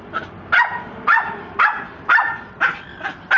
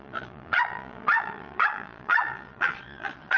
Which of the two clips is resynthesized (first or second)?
second